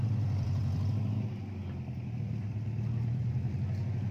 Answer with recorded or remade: remade